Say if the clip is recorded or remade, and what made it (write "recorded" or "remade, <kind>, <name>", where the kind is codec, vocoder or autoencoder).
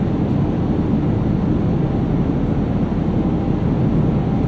recorded